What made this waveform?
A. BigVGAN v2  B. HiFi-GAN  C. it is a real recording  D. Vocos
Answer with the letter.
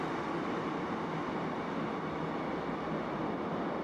C